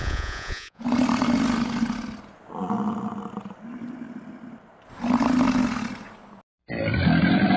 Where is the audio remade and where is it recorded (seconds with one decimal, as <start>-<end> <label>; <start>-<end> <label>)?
0.0-0.8 remade; 0.8-7.6 recorded